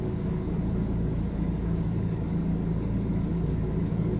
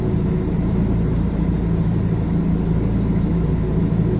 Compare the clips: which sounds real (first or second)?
second